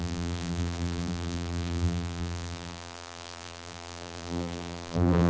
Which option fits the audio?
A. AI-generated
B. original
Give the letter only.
A